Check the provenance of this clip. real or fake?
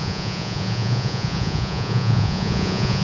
fake